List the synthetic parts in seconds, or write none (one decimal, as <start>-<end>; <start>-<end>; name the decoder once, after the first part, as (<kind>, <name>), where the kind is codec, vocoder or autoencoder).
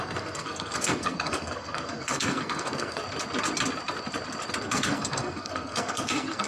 0.0-3.0 (codec, SNAC); 4.6-6.5